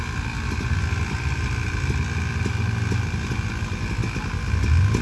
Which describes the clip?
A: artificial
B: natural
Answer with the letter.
B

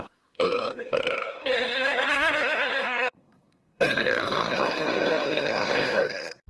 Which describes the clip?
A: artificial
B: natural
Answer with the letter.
A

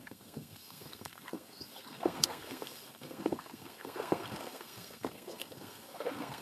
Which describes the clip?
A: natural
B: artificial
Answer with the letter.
B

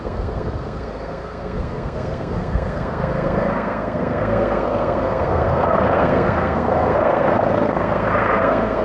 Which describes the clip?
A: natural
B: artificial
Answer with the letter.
B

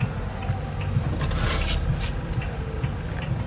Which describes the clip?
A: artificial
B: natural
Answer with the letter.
B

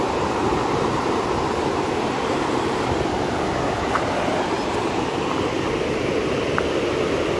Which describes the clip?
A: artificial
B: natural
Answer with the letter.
B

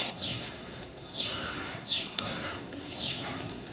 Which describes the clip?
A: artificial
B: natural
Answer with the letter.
A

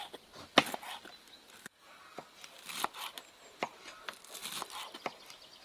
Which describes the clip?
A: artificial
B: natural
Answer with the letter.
B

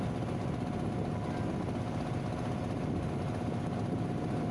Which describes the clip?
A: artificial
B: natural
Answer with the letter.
B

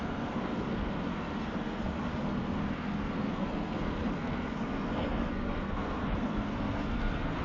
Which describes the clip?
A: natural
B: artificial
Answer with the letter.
B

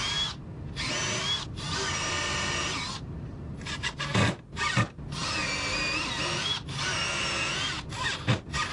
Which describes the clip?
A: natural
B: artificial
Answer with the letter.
A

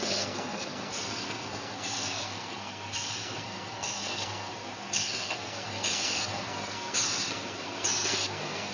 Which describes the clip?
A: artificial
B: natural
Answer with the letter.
A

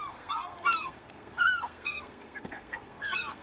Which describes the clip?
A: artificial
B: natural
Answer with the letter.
A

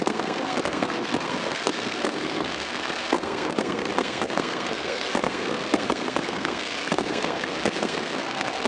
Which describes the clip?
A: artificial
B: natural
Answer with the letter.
A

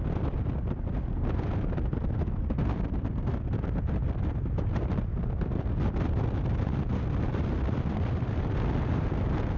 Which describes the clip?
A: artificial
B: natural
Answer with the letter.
B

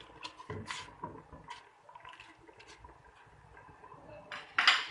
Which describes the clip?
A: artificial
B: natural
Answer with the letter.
B